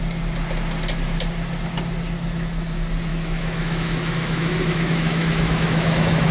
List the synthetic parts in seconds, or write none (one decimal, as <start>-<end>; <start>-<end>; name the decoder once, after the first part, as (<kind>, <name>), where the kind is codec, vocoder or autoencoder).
3.1-6.3 (autoencoder, DAC-VAE)